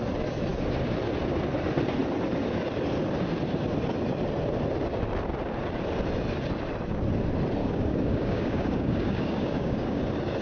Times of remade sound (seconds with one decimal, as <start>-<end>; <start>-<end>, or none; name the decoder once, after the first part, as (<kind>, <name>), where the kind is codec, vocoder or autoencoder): 7.6-10.0 (codec, DAC)